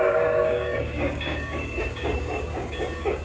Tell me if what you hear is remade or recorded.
remade